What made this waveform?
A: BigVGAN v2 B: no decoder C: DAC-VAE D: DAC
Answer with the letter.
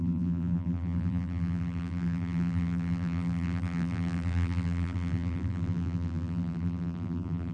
A